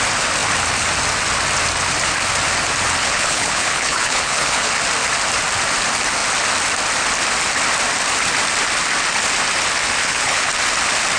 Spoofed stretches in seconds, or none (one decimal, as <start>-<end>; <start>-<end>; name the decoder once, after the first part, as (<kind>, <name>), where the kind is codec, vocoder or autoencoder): 3.0-4.7 (codec, HILCodec); 10.0-10.5